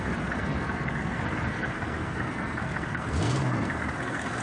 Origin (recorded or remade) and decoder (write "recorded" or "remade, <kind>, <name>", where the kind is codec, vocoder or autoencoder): remade, codec, SNAC